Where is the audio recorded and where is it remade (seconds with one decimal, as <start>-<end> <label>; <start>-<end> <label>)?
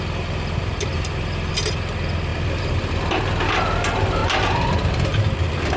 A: 0.0-0.9 recorded; 0.9-1.5 remade; 1.5-5.8 recorded